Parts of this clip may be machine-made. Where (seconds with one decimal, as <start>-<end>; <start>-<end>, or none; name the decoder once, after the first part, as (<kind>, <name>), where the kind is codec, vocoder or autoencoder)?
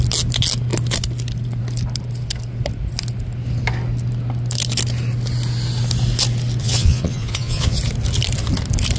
6.6-7.8 (vocoder, Vocos)